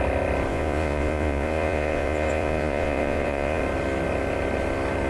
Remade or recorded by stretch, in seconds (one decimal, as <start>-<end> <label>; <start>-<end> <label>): 0.0-0.5 recorded; 0.5-3.6 remade; 3.6-5.1 recorded

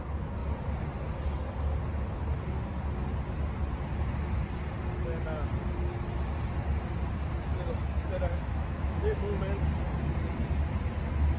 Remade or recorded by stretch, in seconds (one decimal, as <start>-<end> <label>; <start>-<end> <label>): 0.0-8.3 recorded; 8.3-9.4 remade; 9.4-11.4 recorded